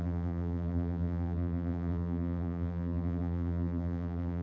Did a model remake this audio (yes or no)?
yes